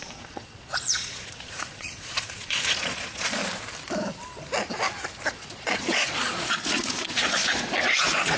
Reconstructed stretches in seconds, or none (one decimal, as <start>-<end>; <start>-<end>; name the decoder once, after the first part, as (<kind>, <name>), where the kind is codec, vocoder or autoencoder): 0.0-3.4 (vocoder, Vocos); 5.3-8.4